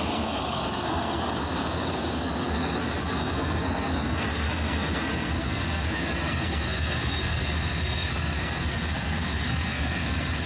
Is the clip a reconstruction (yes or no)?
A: yes